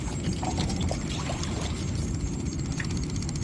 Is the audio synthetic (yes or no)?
yes